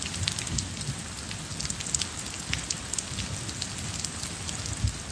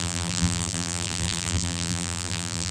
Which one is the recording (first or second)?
first